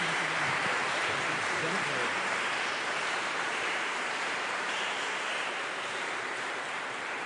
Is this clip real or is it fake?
fake